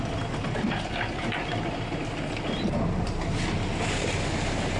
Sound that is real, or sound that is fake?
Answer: real